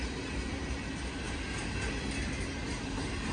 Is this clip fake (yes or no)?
no